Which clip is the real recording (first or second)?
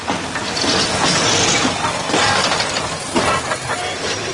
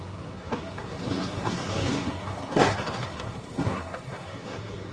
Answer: first